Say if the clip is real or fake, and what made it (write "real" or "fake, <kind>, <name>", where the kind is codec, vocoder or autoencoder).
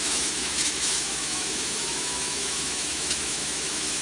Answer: fake, autoencoder, DAC-VAE